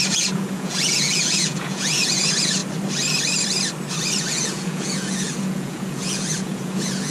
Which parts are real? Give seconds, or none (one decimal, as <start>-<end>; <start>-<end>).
2.6-4.3